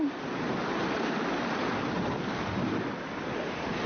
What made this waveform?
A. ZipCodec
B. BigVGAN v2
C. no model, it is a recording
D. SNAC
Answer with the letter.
C